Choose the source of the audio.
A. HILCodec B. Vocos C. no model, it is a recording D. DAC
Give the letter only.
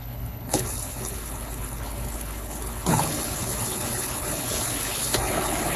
A